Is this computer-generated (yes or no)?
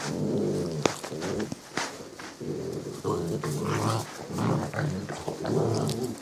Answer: no